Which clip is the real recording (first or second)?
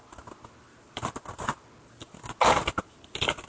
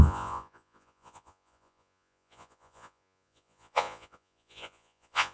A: first